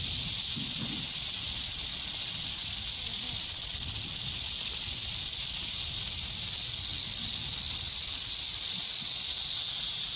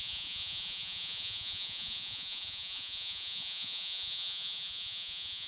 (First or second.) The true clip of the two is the first